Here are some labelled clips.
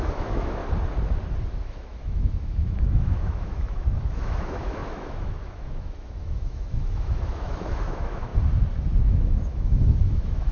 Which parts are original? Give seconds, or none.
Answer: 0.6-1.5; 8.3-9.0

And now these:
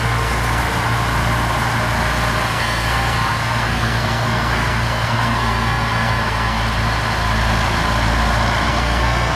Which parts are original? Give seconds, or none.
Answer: 0.6-2.5; 6.6-8.7